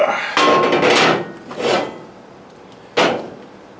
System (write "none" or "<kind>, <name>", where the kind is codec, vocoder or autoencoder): none